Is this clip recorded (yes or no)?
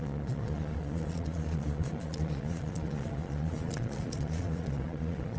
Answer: no